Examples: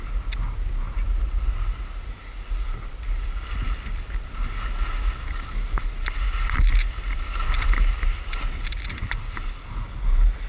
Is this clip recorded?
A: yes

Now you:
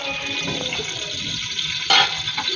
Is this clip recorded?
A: yes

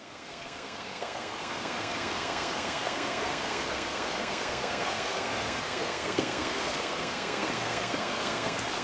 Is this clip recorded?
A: no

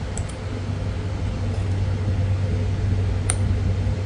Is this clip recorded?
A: yes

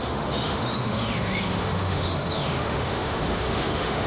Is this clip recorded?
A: no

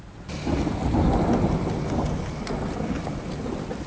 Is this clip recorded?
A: yes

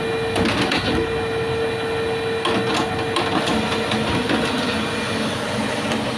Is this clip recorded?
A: yes